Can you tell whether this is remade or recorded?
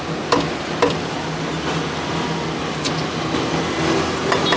recorded